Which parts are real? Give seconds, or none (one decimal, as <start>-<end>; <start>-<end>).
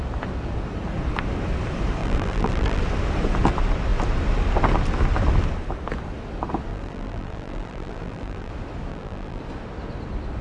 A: 0.0-2.0; 2.8-6.7; 8.5-8.9; 9.4-10.4